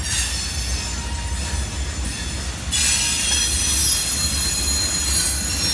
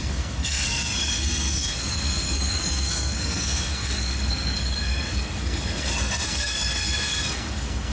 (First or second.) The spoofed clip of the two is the second